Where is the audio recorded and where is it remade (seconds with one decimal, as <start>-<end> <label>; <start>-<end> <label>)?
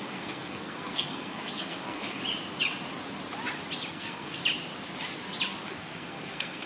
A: 0.0-2.2 remade; 2.2-3.9 recorded; 3.9-4.4 remade; 4.4-5.6 recorded; 5.6-6.7 remade